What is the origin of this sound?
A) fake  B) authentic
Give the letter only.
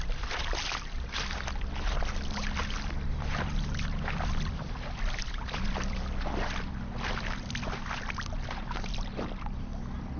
A